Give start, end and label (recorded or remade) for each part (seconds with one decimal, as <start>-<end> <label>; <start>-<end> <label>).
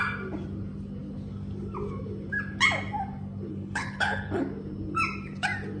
0.0-3.5 recorded; 3.5-4.4 remade; 4.4-5.8 recorded